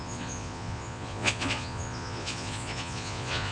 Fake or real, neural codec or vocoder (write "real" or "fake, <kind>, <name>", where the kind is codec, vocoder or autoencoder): fake, vocoder, Vocos